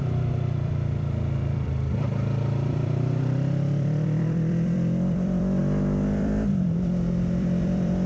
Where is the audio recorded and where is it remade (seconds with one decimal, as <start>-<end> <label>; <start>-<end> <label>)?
0.0-8.1 remade